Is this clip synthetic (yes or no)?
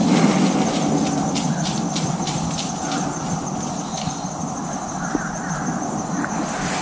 no